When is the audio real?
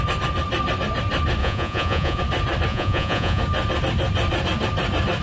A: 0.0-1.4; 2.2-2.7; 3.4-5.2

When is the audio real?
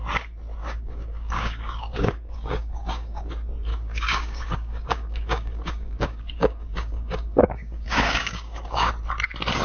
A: 0.0-0.6; 3.3-3.7; 8.9-9.6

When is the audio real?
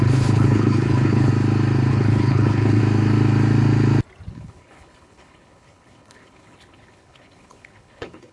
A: 1.3-1.9; 2.8-4.3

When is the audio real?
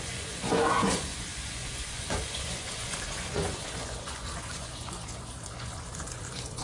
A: none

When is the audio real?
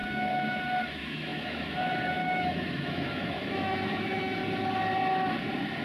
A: 4.4-5.8